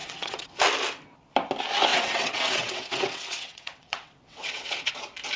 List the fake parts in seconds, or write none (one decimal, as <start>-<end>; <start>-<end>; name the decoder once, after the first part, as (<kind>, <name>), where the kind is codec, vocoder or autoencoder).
0.0-0.6 (vocoder, WaveNeXt); 1.9-4.9

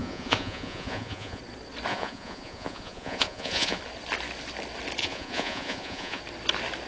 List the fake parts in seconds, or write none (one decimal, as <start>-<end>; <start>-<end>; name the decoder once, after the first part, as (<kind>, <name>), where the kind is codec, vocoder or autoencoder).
0.0-1.4 (vocoder, Vocos); 1.9-3.8; 5.0-6.2

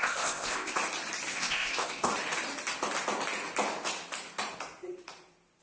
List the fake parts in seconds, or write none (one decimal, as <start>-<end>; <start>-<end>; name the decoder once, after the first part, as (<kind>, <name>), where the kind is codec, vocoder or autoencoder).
0.0-0.8 (codec, ZipCodec); 1.3-2.1

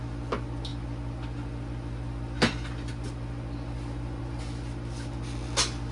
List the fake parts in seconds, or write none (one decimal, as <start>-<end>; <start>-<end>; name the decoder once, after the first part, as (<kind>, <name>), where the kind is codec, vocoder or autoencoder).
none

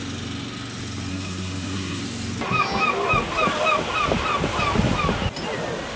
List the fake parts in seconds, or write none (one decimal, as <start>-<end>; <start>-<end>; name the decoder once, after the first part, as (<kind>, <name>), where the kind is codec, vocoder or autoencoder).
1.1-2.0 (codec, SNAC)

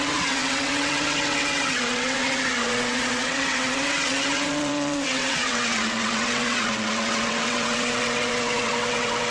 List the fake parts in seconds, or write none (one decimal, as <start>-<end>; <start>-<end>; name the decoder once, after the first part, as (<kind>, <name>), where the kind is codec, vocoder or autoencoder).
0.0-9.3 (vocoder, WaveNeXt)